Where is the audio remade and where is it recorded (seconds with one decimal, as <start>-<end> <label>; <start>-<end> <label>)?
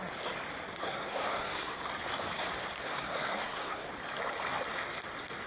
0.0-0.8 recorded; 0.8-1.8 remade; 1.8-2.8 recorded; 2.8-3.9 remade; 3.9-5.5 recorded